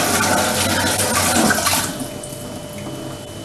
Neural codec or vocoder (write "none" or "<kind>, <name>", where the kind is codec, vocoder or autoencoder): none